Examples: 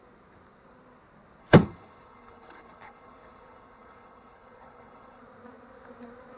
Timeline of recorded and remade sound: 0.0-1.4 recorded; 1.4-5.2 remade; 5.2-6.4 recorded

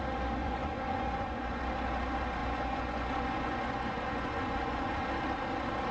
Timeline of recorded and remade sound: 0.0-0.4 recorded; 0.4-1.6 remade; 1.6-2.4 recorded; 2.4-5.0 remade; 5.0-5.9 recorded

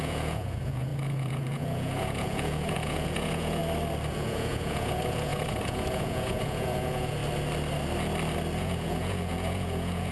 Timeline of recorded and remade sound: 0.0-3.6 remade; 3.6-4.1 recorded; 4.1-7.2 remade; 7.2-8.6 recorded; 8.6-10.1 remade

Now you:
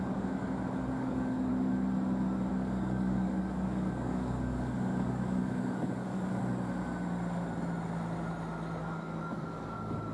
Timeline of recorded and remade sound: 0.0-1.5 remade; 1.5-2.5 recorded; 2.5-6.4 remade; 6.4-8.8 recorded; 8.8-10.1 remade

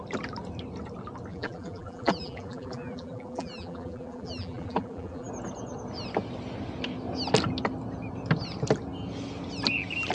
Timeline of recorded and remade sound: 0.0-1.3 recorded; 1.3-5.3 remade; 5.3-10.1 recorded